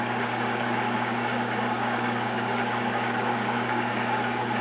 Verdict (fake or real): fake